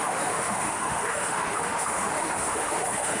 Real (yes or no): no